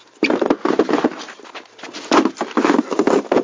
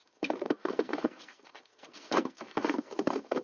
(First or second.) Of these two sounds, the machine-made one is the second